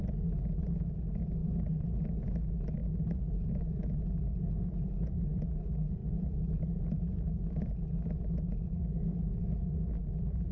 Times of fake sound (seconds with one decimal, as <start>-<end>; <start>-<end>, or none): 0.0-2.8; 3.6-10.5